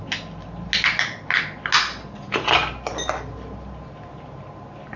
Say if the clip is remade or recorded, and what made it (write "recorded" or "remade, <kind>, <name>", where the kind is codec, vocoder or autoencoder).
recorded